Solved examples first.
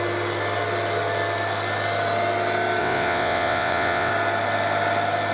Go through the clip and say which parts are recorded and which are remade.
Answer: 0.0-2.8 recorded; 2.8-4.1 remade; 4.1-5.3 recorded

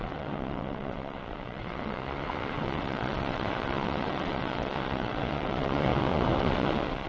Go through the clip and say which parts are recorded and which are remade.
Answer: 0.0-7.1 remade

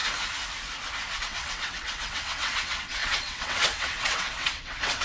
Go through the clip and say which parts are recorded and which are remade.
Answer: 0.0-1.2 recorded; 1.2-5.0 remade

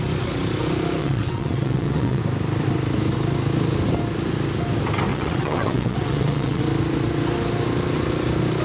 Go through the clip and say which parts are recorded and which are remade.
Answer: 0.0-1.0 recorded; 1.0-2.2 remade; 2.2-5.1 recorded; 5.1-6.6 remade; 6.6-8.6 recorded

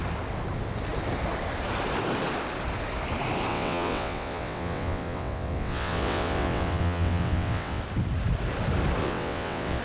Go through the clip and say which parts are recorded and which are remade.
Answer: 0.0-3.5 recorded; 3.5-7.8 remade; 7.8-9.0 recorded; 9.0-9.8 remade

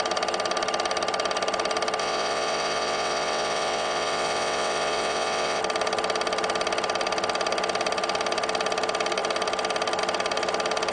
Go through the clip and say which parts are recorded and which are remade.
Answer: 0.0-2.0 recorded; 2.0-5.6 remade; 5.6-10.9 recorded

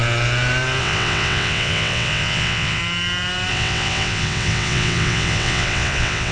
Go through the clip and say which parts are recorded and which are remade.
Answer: 0.0-0.8 recorded; 0.8-2.8 remade; 2.8-3.5 recorded; 3.5-6.3 remade

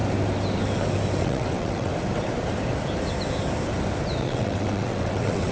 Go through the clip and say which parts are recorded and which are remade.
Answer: 0.0-1.2 recorded; 1.2-1.9 remade; 1.9-4.2 recorded; 4.2-5.5 remade